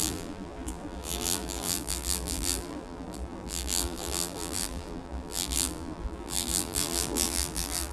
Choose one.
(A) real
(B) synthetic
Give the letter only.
B